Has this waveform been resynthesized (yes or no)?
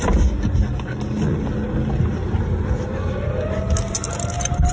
no